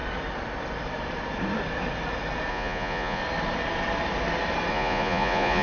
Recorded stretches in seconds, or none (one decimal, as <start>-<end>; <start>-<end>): 0.0-2.5; 3.2-4.7